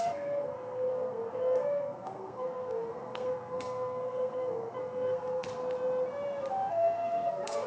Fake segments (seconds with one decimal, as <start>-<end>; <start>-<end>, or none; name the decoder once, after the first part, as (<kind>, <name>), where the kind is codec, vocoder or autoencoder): 0.0-5.6 (codec, SNAC); 6.7-7.7